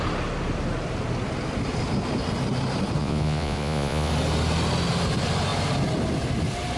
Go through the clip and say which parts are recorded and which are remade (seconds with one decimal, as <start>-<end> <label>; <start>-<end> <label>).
0.0-3.0 recorded; 3.0-4.1 remade; 4.1-6.8 recorded